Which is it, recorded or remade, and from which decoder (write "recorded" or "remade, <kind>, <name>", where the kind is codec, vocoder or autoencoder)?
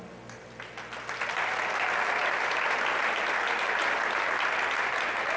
recorded